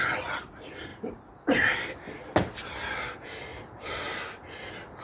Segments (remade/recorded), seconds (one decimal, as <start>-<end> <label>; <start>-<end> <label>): 0.0-0.9 recorded; 0.9-1.9 remade; 1.9-3.5 recorded; 3.5-4.1 remade; 4.1-5.0 recorded